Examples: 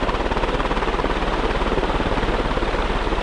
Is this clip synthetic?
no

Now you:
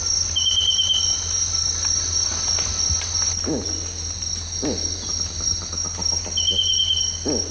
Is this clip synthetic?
no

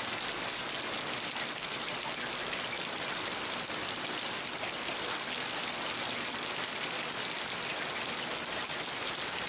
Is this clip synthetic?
no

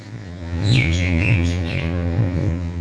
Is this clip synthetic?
yes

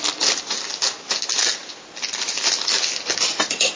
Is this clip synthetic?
no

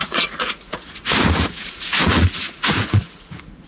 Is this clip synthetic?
yes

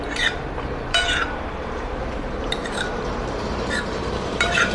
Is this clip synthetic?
yes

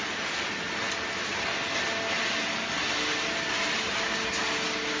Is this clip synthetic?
no